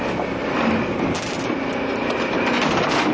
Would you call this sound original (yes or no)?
yes